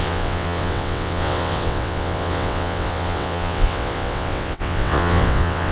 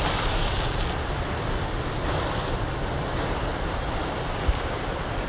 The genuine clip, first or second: second